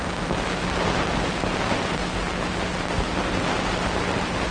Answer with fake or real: real